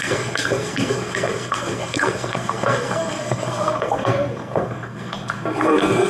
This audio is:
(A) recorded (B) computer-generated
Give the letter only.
B